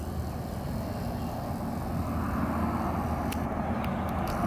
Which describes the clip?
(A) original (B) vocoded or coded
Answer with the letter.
A